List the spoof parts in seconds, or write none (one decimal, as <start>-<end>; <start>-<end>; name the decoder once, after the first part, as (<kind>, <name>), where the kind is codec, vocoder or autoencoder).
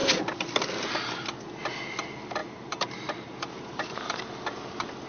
2.4-4.0 (vocoder, BigVGAN v2)